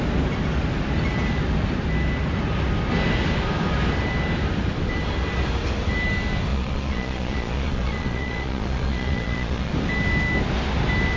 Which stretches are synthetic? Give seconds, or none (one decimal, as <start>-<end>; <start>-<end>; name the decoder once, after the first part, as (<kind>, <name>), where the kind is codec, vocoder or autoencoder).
6.5-9.7 (vocoder, Vocos)